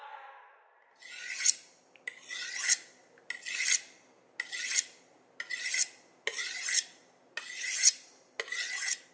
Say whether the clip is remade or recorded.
recorded